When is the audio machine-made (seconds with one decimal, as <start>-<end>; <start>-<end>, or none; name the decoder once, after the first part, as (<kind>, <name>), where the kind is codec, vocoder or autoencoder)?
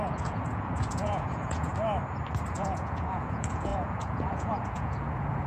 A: 0.0-1.7 (vocoder, Vocos); 2.5-5.5